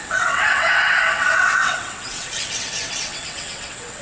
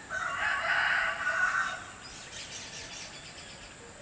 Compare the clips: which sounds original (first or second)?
second